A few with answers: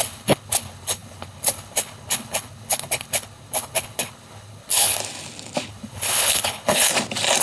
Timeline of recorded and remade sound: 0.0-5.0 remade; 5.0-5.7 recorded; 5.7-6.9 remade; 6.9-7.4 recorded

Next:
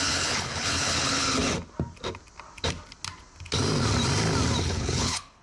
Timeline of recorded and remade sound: 0.0-1.4 remade; 1.4-4.6 recorded; 4.6-5.4 remade